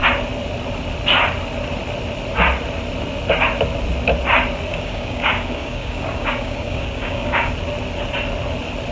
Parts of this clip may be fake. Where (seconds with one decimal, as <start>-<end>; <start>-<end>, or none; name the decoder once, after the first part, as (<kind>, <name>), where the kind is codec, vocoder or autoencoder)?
4.7-7.5 (codec, DAC)